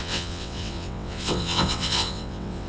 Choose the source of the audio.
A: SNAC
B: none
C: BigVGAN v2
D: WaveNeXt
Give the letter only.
D